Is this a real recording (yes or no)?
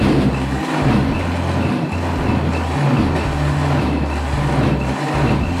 yes